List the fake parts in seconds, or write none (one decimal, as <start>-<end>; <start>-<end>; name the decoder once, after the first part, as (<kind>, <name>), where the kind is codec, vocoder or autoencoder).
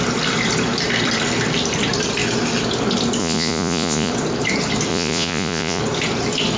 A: 3.2-4.1 (vocoder, Vocos); 4.9-5.8